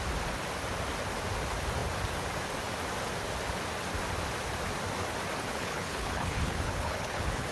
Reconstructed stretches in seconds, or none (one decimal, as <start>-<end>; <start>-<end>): 5.5-7.5